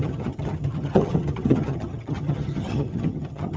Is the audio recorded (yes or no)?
no